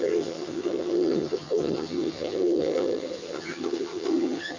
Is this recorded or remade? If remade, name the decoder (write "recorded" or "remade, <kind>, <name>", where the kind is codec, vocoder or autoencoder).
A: remade, vocoder, HiFi-GAN